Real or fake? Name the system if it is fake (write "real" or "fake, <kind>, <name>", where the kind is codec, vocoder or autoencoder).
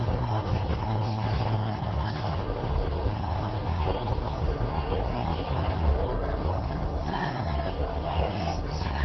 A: fake, codec, SNAC